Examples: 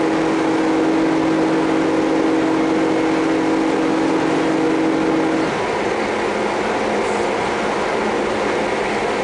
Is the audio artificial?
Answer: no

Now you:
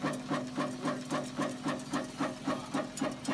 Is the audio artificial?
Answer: no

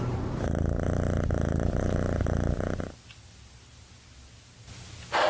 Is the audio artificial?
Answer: no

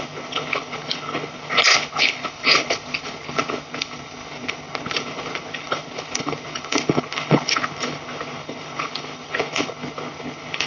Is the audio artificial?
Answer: yes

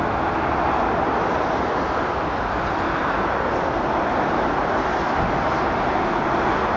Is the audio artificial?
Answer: no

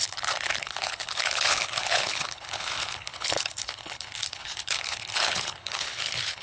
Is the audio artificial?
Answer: yes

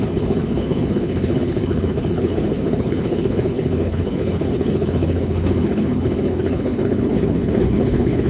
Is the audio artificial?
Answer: yes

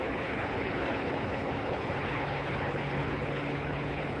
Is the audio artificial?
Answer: yes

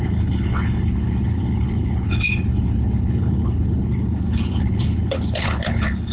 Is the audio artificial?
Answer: yes